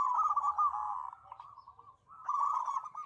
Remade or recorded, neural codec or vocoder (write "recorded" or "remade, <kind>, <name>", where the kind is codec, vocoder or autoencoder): recorded